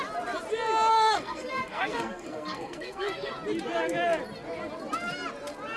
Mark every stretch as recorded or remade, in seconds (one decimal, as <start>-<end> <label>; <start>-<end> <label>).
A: 0.0-0.9 recorded; 0.9-3.3 remade; 3.3-5.8 recorded